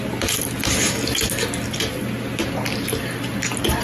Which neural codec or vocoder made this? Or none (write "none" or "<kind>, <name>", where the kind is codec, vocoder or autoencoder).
none